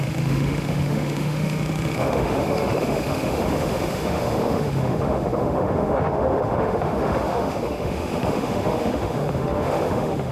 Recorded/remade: remade